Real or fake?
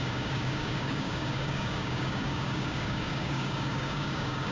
fake